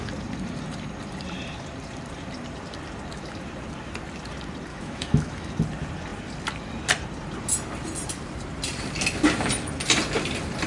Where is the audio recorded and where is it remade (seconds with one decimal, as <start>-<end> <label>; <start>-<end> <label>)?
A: 0.0-4.7 recorded; 4.7-5.5 remade; 5.5-10.7 recorded